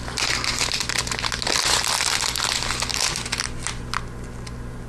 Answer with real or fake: real